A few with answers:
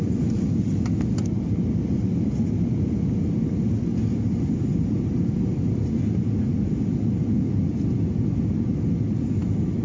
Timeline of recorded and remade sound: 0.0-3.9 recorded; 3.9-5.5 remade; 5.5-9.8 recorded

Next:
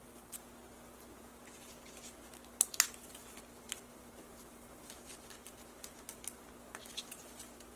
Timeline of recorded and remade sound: 0.0-3.9 recorded; 3.9-5.3 remade; 5.3-7.8 recorded

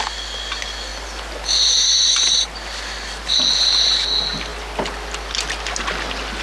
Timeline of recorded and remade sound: 0.0-6.4 recorded